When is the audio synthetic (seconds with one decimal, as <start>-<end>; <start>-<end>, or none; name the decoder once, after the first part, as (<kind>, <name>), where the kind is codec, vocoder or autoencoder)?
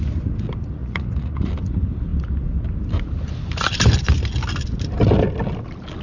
0.8-1.5 (vocoder, Vocos)